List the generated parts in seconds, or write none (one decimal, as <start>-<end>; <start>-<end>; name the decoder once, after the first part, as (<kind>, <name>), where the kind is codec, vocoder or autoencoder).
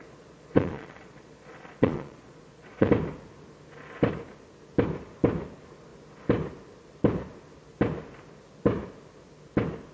0.0-2.9 (vocoder, Vocos)